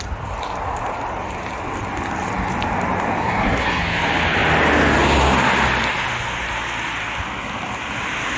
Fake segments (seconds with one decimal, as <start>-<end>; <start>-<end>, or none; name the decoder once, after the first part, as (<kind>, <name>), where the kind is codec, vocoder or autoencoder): 3.2-3.8 (codec, SNAC)